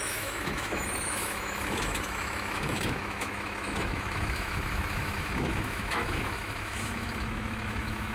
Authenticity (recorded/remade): remade